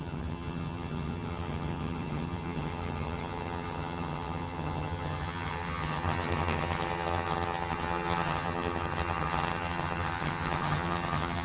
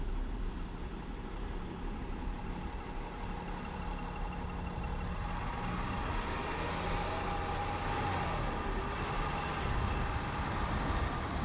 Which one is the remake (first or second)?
first